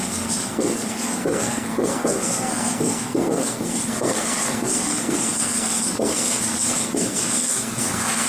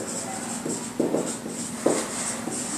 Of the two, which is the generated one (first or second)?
first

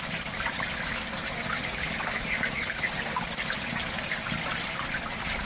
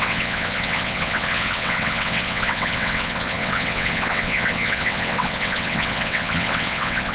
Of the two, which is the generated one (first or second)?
second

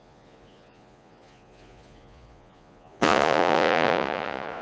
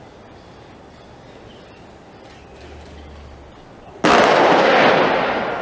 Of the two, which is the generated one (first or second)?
first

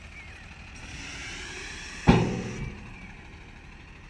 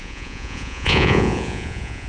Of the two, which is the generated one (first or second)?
second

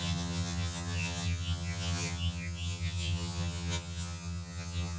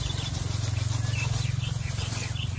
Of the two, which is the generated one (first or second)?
first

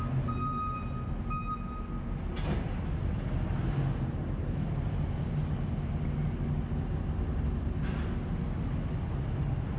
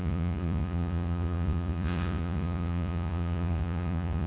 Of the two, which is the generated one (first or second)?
second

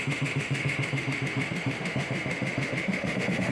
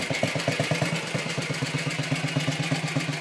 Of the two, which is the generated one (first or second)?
first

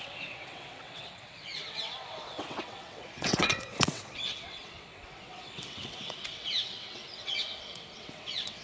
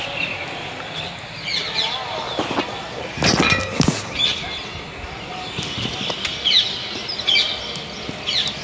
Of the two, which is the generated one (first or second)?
first